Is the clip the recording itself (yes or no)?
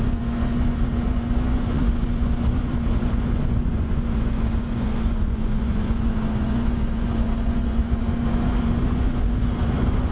no